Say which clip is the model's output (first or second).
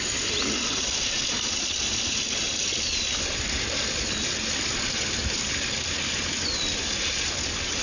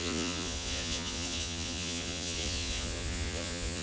second